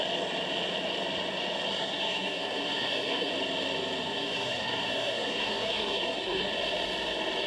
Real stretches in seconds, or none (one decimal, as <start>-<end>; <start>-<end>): 0.0-1.7; 3.3-4.1; 6.5-7.5